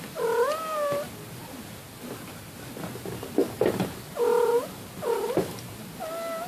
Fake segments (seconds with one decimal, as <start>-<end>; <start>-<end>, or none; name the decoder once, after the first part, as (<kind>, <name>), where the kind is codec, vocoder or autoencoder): none